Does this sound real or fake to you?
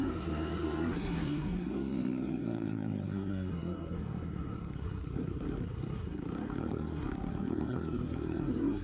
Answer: fake